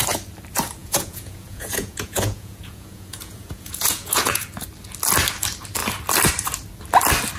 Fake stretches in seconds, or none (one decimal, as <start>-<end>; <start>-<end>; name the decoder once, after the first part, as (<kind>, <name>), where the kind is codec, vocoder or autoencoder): 0.8-4.5 (vocoder, Vocos)